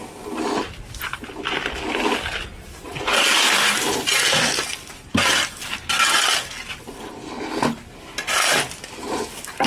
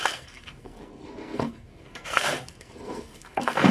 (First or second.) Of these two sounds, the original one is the first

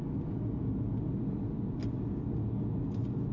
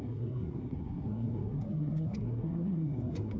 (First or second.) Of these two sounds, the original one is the first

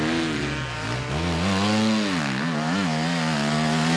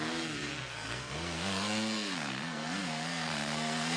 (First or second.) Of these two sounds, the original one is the first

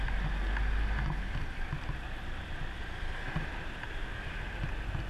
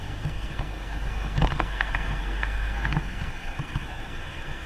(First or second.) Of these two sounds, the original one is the first